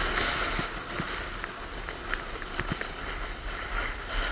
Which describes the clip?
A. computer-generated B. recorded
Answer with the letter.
B